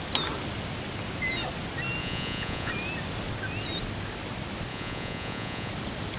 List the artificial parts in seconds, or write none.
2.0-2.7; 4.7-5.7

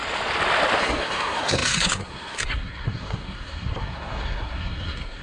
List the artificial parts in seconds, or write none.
0.8-5.2

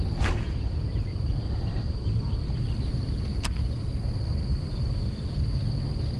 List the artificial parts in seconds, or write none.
1.1-2.9; 3.3-3.9; 4.5-5.4

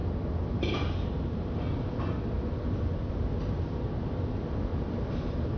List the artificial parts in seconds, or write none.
4.7-5.6

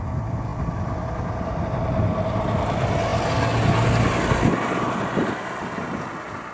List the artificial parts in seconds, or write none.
none

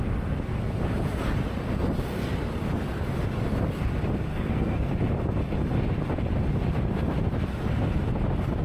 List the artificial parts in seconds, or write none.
4.3-4.9